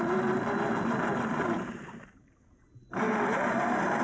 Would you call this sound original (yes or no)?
no